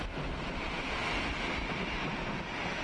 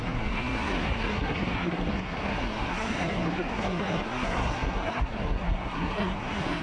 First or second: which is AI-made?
second